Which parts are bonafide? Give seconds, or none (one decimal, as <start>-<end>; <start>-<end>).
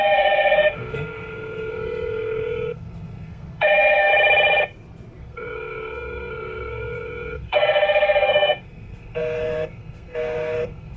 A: 4.1-5.2